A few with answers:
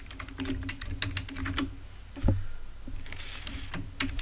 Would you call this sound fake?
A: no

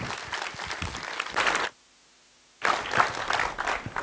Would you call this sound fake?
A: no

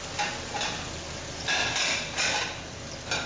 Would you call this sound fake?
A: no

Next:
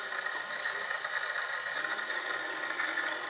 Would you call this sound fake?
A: no